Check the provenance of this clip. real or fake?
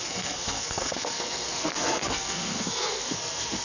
fake